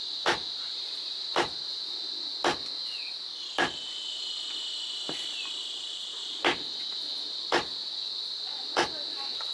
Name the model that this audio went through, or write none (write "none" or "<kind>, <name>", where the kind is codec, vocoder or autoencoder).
none